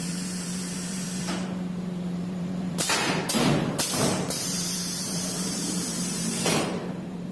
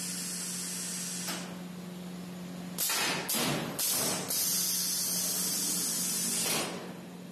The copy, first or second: first